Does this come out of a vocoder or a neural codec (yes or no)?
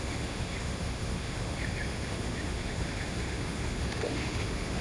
yes